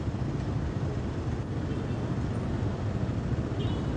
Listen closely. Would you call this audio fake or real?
real